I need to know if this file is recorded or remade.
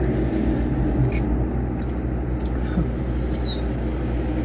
recorded